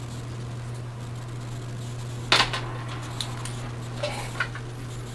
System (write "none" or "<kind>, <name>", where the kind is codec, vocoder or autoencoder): none